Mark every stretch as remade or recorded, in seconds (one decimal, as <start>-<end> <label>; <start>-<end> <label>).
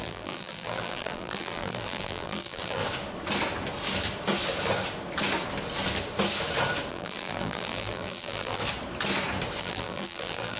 0.0-2.8 remade; 2.8-6.9 recorded; 6.9-8.6 remade; 8.6-9.6 recorded; 9.6-10.6 remade